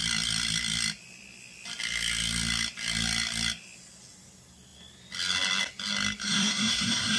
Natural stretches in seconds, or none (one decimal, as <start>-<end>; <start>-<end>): 0.0-6.2